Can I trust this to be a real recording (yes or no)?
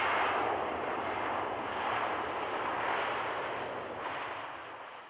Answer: yes